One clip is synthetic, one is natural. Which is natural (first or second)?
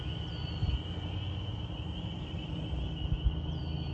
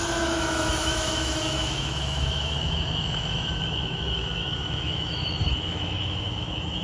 first